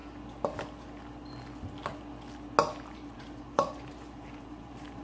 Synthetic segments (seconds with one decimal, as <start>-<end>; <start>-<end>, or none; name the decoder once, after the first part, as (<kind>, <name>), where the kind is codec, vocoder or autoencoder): 2.9-5.0 (vocoder, BigVGAN v2)